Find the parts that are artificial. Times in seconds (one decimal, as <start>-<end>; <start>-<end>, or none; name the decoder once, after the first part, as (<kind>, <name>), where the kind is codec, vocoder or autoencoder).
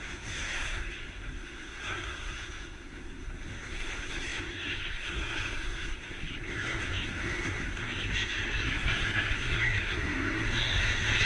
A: 0.0-11.3 (codec, SNAC)